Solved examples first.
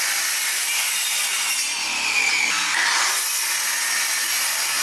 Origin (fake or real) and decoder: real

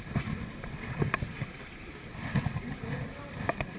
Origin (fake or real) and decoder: real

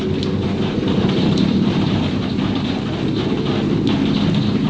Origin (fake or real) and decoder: real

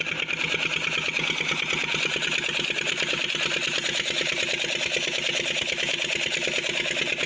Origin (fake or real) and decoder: real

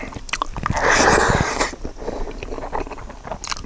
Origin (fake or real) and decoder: real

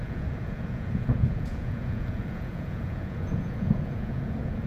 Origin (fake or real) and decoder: fake, vocoder, Vocos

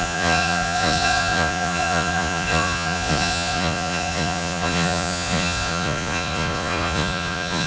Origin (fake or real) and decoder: fake, vocoder, Vocos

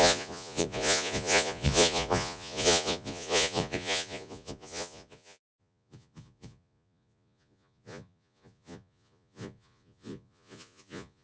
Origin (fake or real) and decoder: fake, vocoder, Vocos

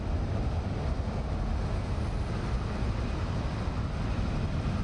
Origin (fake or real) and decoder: real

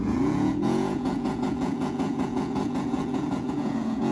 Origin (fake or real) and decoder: fake, vocoder, Vocos